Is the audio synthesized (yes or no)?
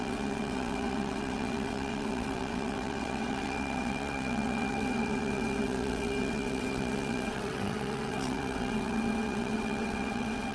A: yes